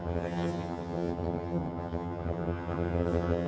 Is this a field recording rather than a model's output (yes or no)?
no